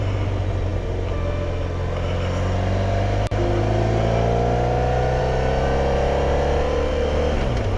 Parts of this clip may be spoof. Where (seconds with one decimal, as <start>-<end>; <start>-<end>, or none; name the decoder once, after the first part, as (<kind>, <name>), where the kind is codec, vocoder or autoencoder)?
none